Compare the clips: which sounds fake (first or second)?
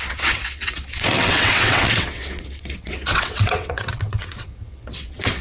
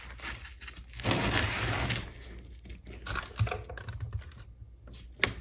first